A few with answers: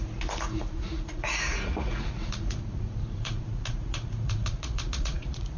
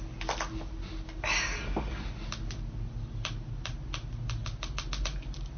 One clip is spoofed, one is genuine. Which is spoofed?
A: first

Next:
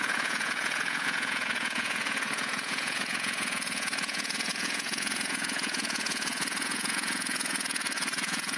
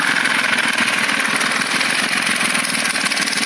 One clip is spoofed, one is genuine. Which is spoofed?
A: first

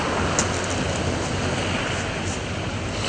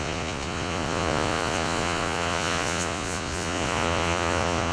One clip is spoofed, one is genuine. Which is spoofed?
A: second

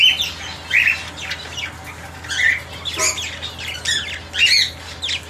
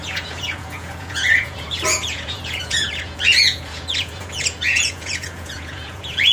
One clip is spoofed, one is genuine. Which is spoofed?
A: second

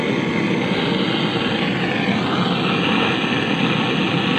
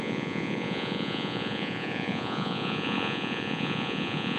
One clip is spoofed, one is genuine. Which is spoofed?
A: second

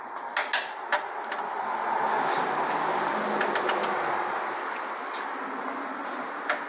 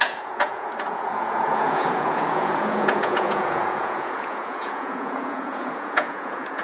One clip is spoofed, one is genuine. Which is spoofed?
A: second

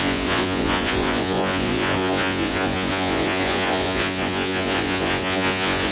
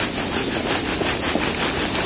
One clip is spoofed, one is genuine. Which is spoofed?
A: first